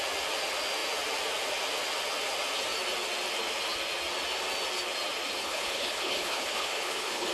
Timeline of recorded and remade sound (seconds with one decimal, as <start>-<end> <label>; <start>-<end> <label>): 0.0-5.4 recorded; 5.4-7.3 remade